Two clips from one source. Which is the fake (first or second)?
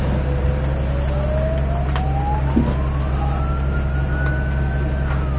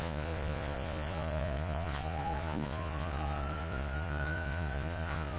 second